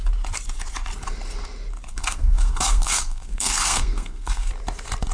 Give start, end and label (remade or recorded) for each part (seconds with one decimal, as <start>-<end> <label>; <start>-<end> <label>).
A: 0.0-1.9 recorded; 1.9-4.5 remade; 4.5-5.1 recorded